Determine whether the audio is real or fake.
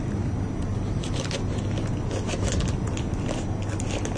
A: real